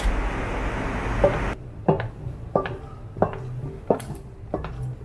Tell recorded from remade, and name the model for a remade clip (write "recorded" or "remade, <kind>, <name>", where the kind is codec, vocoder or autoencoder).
recorded